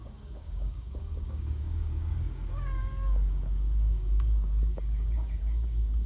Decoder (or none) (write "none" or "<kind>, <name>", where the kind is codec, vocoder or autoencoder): codec, DAC